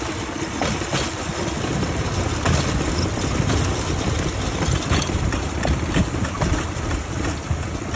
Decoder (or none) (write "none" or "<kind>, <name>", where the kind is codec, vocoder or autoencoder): none